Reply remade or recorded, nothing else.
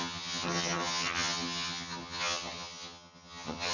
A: remade